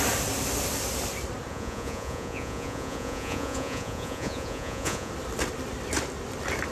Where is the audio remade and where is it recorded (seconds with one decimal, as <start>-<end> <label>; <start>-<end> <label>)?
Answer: 0.0-1.5 recorded; 1.5-5.1 remade; 5.1-6.7 recorded